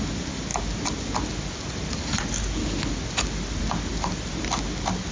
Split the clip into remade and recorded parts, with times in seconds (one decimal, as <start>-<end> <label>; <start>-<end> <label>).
0.0-5.1 recorded

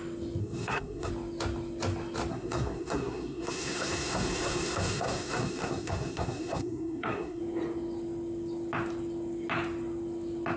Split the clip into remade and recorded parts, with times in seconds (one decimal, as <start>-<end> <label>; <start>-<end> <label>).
0.0-0.4 recorded; 0.4-1.1 remade; 1.1-2.3 recorded; 2.3-7.4 remade; 7.4-10.6 recorded

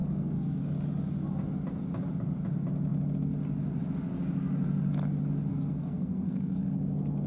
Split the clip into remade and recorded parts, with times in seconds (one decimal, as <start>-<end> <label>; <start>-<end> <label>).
0.0-0.6 remade; 0.6-5.5 recorded; 5.5-6.6 remade; 6.6-7.3 recorded

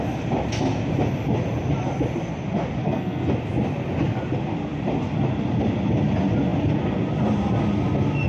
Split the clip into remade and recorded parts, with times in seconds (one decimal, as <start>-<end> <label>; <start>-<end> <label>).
0.0-2.8 recorded; 2.8-3.3 remade; 3.3-8.3 recorded

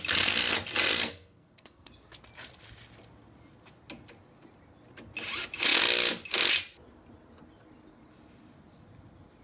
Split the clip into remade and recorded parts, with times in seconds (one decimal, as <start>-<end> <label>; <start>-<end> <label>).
0.0-1.0 recorded; 1.0-1.9 remade; 1.9-9.4 recorded